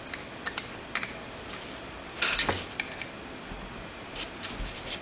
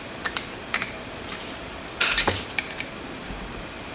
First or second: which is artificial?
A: second